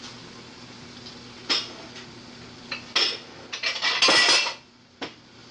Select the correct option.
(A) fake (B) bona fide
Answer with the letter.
B